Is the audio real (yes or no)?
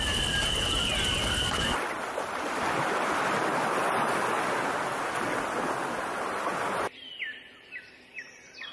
yes